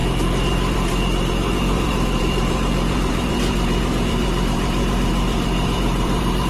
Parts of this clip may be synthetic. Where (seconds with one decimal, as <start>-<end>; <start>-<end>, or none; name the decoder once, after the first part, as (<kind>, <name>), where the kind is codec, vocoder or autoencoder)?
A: 0.0-6.5 (vocoder, BigVGAN v2)